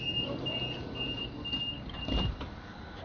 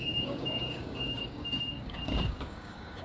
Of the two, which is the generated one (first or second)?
second